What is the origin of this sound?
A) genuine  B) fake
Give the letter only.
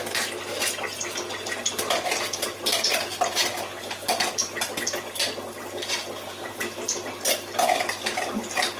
A